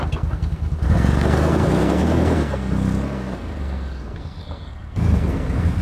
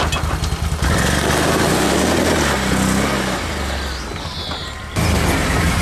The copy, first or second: first